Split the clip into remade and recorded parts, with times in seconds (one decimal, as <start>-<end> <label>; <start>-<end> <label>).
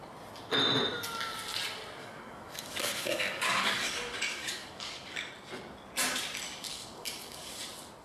0.0-2.0 recorded; 2.0-5.3 remade; 5.3-6.7 recorded; 6.7-7.6 remade; 7.6-8.0 recorded